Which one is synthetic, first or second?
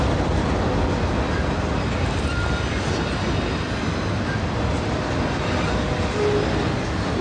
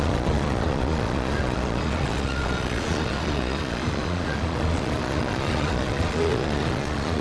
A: second